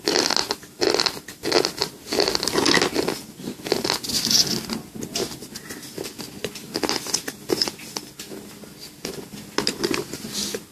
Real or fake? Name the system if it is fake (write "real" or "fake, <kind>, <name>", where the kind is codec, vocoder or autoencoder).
real